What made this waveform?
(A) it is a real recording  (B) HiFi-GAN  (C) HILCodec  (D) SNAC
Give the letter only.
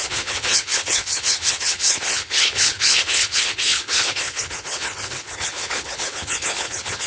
C